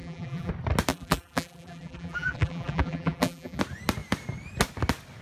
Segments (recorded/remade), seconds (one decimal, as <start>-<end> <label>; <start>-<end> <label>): 0.0-0.5 remade; 0.5-0.9 recorded; 0.9-3.6 remade; 3.6-5.2 recorded

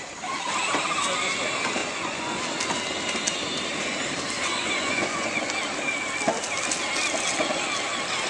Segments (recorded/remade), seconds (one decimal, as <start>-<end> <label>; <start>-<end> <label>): 0.0-1.8 recorded; 1.8-2.4 remade; 2.4-4.5 recorded; 4.5-5.5 remade; 5.5-8.3 recorded